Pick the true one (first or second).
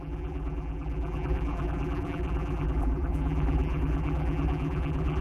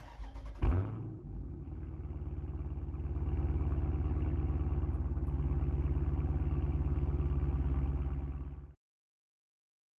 second